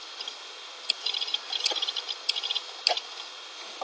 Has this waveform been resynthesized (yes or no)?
no